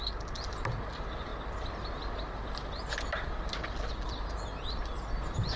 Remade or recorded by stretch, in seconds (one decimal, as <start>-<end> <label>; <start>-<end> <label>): 0.0-5.6 recorded